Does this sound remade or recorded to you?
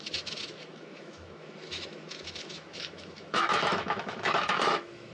remade